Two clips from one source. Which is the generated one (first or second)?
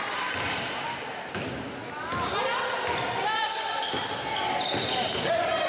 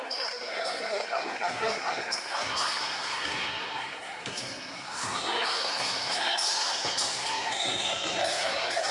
second